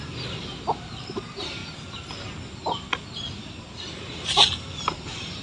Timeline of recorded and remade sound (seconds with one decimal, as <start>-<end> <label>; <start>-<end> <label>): 0.0-1.6 remade; 1.6-4.8 recorded; 4.8-5.4 remade